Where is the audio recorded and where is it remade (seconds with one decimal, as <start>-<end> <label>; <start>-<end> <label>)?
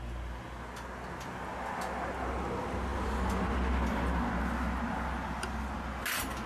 0.0-6.5 recorded